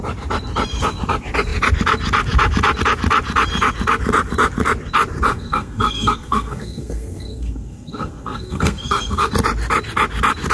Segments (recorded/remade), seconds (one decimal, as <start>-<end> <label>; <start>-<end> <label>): 0.0-5.3 recorded; 5.3-9.3 remade; 9.3-10.5 recorded